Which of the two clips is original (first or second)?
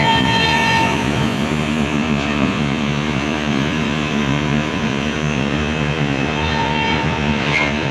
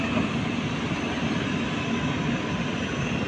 second